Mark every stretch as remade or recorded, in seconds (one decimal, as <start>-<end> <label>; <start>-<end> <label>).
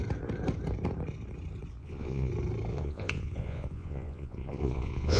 0.0-1.8 recorded; 1.8-2.3 remade; 2.3-2.7 recorded; 2.7-5.2 remade